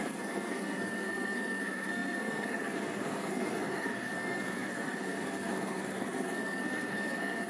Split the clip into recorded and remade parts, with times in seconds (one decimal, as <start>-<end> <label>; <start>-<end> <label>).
0.0-7.5 remade